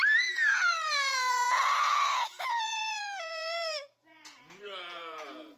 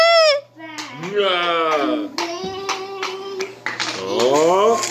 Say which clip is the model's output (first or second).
first